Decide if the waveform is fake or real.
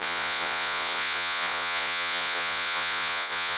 fake